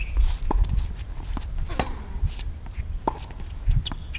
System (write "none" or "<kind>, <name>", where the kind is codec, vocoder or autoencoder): none